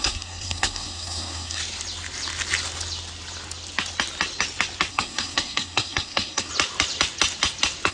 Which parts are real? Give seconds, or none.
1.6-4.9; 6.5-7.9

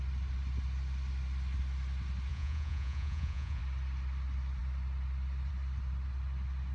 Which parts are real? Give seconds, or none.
0.0-2.3; 3.6-6.7

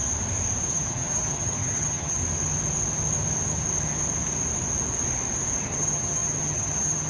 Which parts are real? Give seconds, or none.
0.0-0.7; 2.2-5.6